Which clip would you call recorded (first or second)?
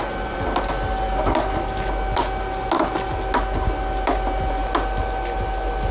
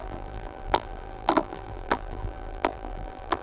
first